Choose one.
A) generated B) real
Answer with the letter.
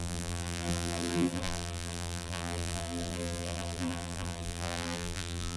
A